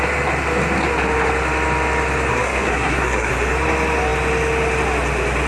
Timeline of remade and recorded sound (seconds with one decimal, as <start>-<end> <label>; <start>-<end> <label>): 0.0-2.3 recorded; 2.3-3.3 remade; 3.3-5.5 recorded